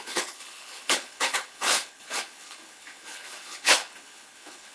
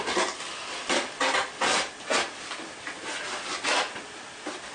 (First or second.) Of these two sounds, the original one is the second